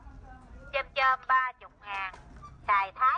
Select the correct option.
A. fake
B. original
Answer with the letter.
B